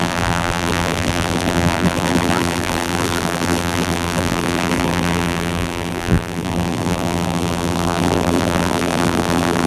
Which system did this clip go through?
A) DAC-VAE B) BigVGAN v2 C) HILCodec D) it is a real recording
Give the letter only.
B